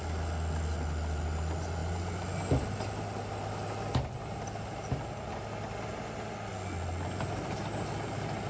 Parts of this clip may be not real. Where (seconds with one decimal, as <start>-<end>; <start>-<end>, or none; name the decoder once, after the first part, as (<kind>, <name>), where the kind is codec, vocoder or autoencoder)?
none